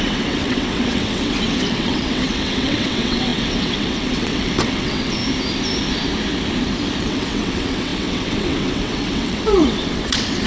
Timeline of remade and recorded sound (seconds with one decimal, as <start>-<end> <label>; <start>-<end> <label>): 0.0-5.2 remade; 5.2-7.0 recorded; 7.0-10.5 remade